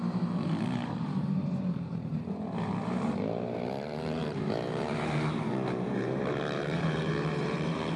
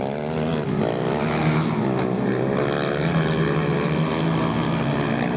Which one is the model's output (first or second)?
first